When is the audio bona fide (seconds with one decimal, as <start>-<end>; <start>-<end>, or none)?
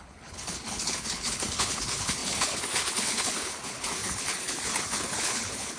none